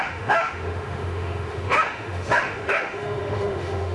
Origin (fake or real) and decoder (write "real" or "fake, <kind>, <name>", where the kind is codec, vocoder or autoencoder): fake, autoencoder, DAC-VAE